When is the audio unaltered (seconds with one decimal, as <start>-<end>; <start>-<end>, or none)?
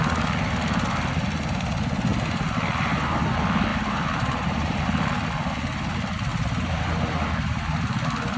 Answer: 0.0-3.7; 4.8-6.3; 7.8-8.4